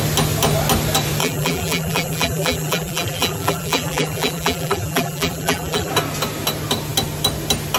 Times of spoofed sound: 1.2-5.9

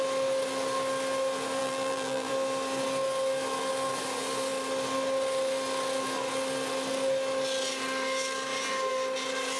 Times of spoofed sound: 1.6-2.3

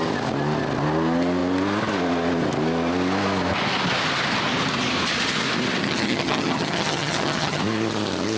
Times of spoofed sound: 5.8-7.6

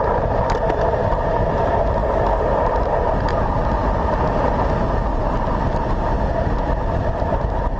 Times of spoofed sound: none

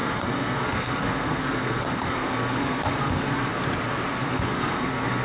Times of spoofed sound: 0.0-3.5; 4.1-5.2

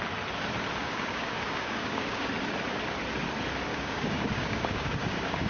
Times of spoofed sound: 0.8-2.3; 3.7-5.5